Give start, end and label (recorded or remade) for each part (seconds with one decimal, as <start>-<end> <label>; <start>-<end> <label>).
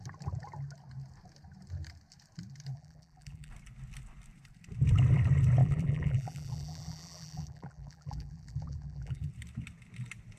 0.0-2.7 recorded; 2.7-3.5 remade; 3.5-5.6 recorded; 5.6-9.3 remade; 9.3-10.4 recorded